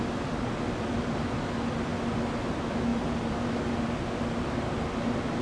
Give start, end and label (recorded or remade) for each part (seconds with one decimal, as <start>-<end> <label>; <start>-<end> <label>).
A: 0.0-5.4 recorded